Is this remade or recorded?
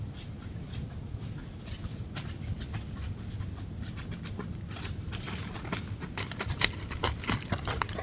recorded